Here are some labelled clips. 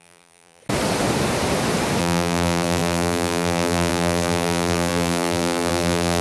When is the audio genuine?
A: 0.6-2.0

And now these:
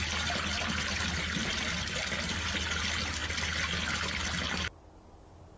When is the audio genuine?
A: 0.0-1.4; 2.3-5.6